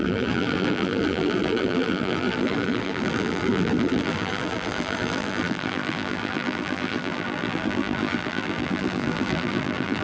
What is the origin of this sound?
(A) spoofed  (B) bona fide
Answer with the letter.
A